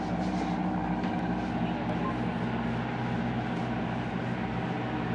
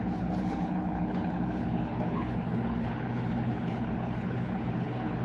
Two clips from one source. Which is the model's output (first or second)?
second